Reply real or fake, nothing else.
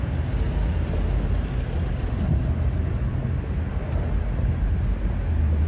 real